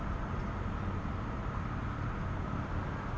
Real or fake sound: real